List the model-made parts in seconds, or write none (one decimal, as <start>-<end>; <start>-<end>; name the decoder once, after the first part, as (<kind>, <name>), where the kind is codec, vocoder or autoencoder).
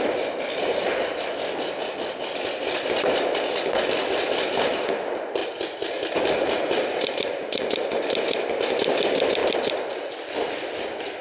none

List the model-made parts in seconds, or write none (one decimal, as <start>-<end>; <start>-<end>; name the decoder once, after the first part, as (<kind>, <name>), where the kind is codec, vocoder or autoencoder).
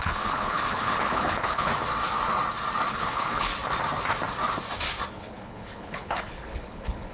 0.0-1.7 (codec, HILCodec); 2.9-3.5; 5.1-7.1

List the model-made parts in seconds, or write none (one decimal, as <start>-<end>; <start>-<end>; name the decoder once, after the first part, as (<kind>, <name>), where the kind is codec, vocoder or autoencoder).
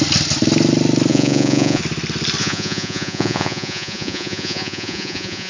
1.1-1.8 (vocoder, Vocos); 2.4-5.5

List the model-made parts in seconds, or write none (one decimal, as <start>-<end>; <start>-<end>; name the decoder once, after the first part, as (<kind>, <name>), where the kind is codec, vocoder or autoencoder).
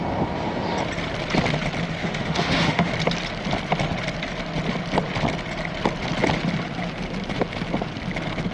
2.0-2.9 (autoencoder, DAC-VAE)